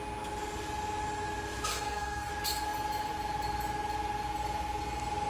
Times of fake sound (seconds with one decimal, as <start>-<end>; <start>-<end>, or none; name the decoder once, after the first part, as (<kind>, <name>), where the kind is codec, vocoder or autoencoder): 1.7-2.3 (codec, DAC)

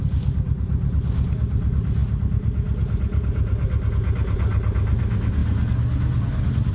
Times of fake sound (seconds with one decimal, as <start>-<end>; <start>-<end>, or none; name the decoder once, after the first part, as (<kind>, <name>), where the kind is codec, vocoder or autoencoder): none

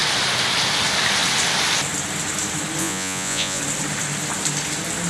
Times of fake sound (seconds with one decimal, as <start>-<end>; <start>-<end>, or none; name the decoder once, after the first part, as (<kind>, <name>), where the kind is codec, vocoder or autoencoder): 2.8-3.6 (vocoder, Vocos)

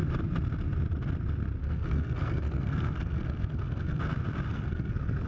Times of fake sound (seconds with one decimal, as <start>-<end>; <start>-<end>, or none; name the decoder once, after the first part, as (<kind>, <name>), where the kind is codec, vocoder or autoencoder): 1.6-4.0 (codec, SNAC); 4.5-5.3